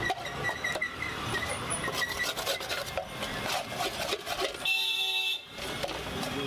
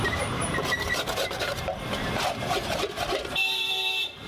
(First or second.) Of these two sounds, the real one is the first